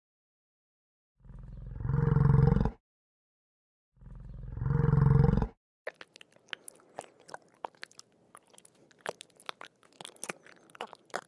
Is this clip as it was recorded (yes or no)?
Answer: yes